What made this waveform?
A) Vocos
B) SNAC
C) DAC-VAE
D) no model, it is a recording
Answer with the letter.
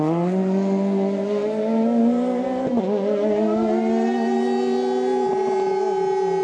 D